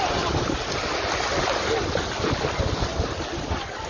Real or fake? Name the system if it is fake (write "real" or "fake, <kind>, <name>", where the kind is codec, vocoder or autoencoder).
real